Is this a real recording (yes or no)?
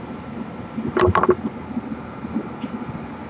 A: yes